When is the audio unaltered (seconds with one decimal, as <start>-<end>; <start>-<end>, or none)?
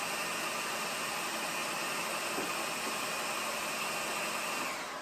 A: 0.0-5.0